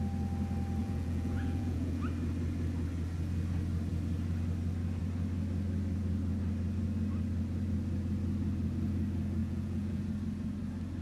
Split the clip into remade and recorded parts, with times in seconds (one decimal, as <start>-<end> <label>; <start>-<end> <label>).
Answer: 0.0-0.8 recorded; 0.8-2.0 remade; 2.0-9.4 recorded; 9.4-10.0 remade; 10.0-11.0 recorded